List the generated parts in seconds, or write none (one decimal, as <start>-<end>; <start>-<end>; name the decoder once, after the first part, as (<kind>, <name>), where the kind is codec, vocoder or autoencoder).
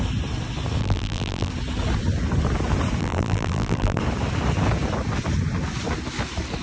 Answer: 0.8-1.5 (vocoder, BigVGAN v2); 3.0-4.0